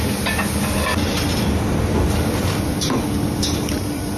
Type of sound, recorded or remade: recorded